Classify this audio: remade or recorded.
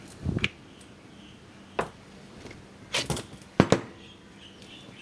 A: recorded